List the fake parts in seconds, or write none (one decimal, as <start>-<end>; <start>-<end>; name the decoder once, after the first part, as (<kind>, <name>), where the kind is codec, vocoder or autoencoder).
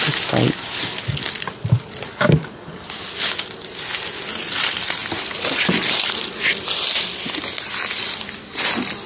none